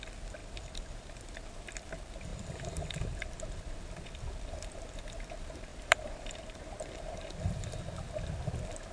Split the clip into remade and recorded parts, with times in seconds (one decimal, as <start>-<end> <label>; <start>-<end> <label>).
0.0-0.4 recorded; 0.4-1.0 remade; 1.0-2.3 recorded; 2.3-3.8 remade; 3.8-5.7 recorded; 5.7-6.4 remade; 6.4-8.9 recorded